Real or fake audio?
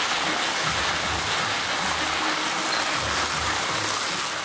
real